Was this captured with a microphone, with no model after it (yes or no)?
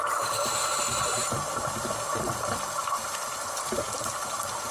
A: no